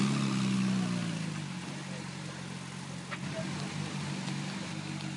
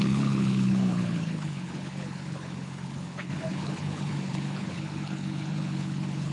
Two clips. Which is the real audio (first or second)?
first